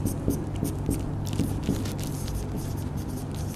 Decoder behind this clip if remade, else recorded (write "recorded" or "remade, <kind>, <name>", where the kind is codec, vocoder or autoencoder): recorded